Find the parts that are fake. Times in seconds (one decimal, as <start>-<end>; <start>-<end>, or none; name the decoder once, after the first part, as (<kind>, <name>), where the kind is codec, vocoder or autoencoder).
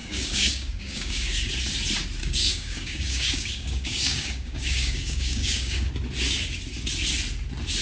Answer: 0.0-1.5 (codec, DAC); 2.2-5.9